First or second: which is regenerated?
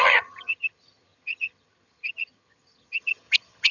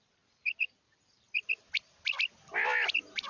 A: first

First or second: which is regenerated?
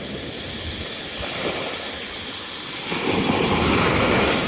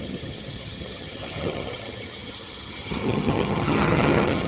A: second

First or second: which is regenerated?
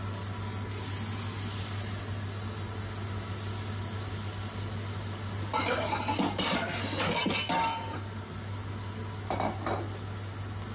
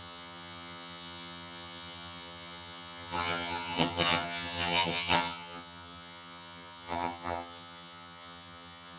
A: second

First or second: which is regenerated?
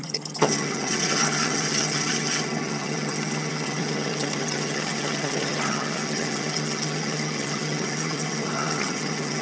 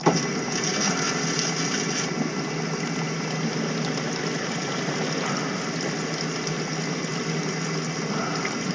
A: first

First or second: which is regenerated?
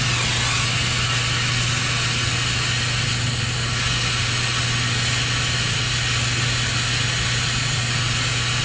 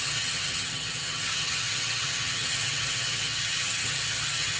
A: second